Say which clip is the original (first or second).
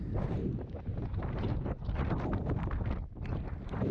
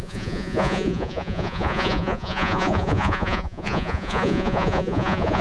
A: first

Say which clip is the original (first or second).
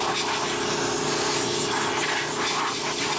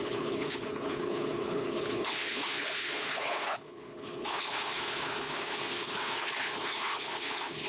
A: first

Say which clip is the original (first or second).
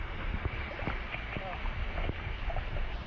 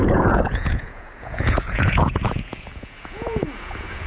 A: first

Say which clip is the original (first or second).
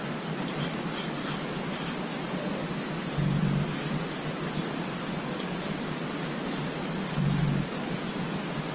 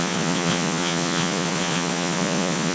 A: first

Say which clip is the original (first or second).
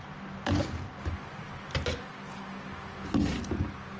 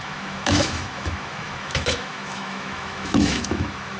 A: first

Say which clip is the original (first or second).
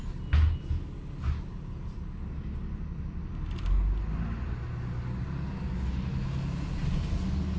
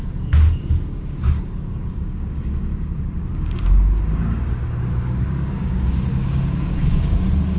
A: first